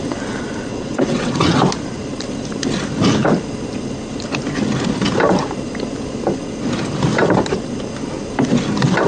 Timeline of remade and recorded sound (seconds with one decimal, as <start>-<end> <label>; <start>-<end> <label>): 0.0-0.7 recorded; 0.7-1.6 remade; 1.6-9.1 recorded